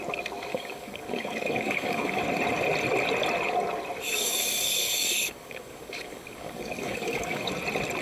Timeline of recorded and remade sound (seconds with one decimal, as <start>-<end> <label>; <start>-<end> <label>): 0.0-0.5 recorded; 0.5-2.2 remade; 2.2-4.1 recorded; 4.1-7.5 remade; 7.5-8.0 recorded